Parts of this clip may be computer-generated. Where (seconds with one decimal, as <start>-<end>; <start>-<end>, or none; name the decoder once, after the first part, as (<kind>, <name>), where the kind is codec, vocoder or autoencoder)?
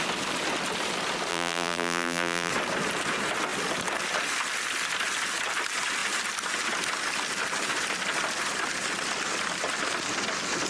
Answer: 1.3-2.5 (vocoder, BigVGAN v2)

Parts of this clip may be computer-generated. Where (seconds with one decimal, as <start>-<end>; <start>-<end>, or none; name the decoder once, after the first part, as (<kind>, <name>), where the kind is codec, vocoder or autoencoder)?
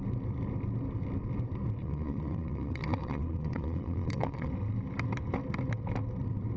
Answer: 1.8-4.5 (vocoder, Vocos)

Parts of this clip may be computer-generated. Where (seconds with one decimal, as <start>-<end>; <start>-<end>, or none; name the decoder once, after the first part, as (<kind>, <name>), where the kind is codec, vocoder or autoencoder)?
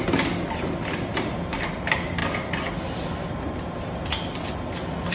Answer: none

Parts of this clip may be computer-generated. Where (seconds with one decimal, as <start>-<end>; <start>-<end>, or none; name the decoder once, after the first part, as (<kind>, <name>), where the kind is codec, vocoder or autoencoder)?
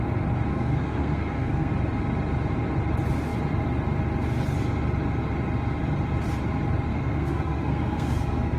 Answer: 0.5-1.7 (codec, SNAC); 6.9-8.6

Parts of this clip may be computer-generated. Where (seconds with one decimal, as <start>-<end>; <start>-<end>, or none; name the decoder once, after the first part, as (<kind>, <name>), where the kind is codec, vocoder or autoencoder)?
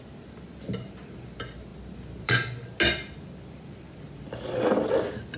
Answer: none